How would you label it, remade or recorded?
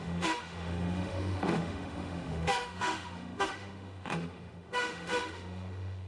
remade